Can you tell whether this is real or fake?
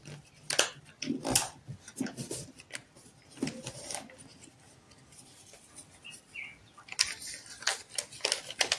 real